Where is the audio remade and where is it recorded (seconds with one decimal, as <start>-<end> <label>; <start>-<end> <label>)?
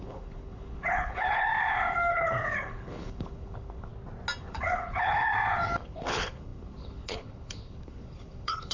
0.0-1.5 remade; 1.5-2.1 recorded; 2.1-3.9 remade; 3.9-4.4 recorded; 4.4-5.3 remade; 5.3-5.9 recorded; 5.9-8.7 remade